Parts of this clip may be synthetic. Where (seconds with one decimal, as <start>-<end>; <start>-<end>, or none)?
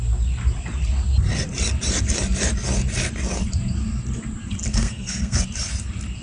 4.7-5.4